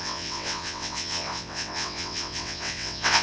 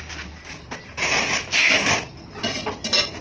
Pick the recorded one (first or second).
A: second